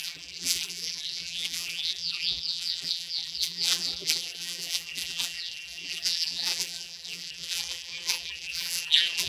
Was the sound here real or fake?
fake